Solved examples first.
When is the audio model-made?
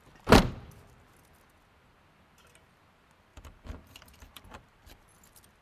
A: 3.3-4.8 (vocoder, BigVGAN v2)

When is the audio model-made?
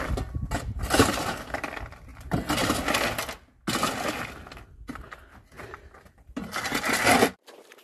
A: none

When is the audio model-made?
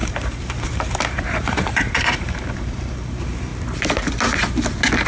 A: 0.0-3.5 (vocoder, BigVGAN v2)